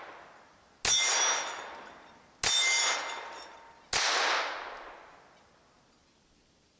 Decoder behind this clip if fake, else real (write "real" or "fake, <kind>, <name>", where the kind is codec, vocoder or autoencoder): real